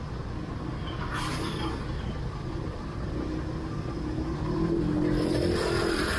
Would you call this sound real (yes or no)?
yes